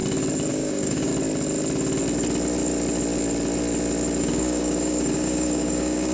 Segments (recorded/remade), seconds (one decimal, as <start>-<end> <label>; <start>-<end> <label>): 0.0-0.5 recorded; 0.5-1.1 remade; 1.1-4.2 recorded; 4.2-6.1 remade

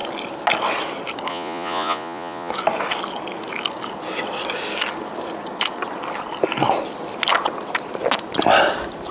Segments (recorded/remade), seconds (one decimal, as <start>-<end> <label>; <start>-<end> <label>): 0.0-1.3 recorded; 1.3-2.5 remade; 2.5-9.1 recorded

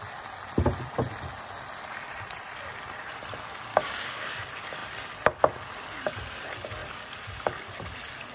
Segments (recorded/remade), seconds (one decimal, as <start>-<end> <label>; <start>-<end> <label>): 0.0-3.7 recorded; 3.7-4.3 remade; 4.3-8.3 recorded